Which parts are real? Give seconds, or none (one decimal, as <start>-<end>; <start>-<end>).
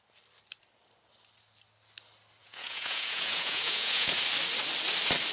0.0-2.4; 4.2-5.3